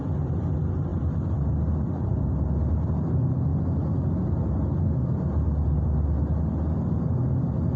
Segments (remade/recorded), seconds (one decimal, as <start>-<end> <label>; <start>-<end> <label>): 0.0-7.8 recorded